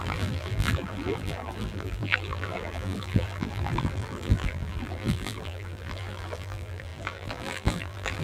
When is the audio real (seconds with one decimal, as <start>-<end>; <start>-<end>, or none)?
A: none